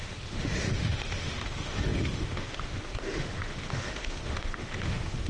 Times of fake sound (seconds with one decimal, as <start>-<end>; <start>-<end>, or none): 0.0-5.3